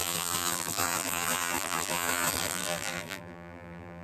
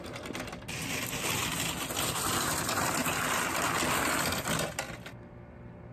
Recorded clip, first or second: second